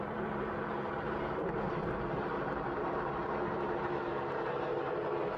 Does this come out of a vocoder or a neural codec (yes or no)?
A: yes